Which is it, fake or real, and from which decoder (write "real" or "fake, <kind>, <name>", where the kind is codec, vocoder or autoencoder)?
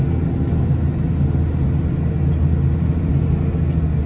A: real